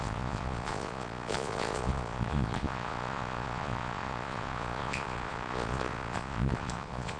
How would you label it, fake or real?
fake